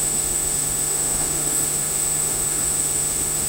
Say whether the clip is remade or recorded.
remade